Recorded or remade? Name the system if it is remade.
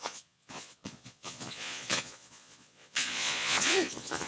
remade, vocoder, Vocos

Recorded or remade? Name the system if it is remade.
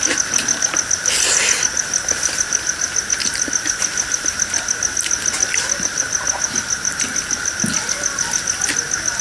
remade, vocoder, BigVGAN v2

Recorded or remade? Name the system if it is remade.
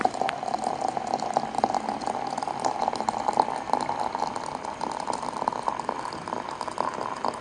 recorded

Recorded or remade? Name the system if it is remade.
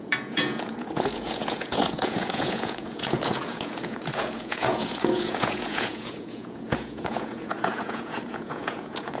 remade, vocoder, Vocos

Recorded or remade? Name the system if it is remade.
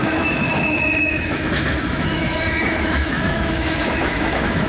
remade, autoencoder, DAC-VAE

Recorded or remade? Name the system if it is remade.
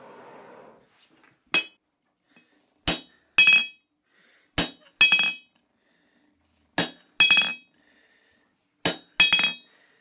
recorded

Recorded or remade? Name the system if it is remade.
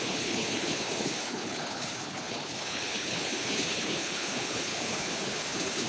remade, codec, HILCodec